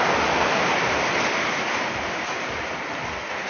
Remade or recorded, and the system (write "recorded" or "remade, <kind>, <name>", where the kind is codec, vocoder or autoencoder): recorded